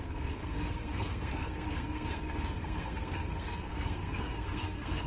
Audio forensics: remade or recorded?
remade